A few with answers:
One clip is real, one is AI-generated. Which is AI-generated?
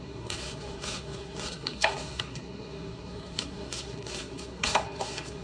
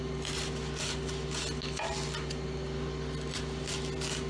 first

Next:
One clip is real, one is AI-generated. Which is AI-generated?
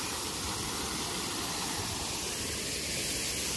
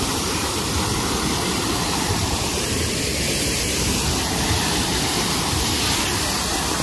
second